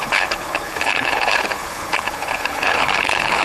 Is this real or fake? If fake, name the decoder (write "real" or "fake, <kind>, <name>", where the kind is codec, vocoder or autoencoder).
fake, codec, HILCodec